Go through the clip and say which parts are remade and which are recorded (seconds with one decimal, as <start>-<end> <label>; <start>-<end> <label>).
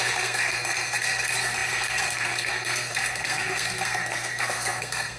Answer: 0.0-5.2 remade